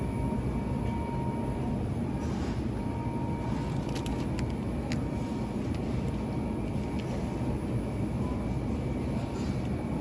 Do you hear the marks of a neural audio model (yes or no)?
no